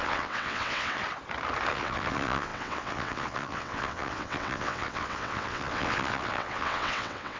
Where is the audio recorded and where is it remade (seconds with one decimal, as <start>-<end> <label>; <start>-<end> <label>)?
0.0-1.0 remade; 1.0-1.7 recorded; 1.7-7.4 remade